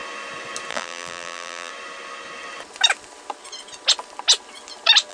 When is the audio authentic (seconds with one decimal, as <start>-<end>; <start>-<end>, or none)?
0.0-0.7; 1.7-5.1